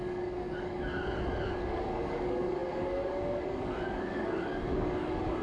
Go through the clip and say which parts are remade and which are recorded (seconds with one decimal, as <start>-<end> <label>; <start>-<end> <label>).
0.0-0.9 remade; 0.9-1.5 recorded; 1.5-5.4 remade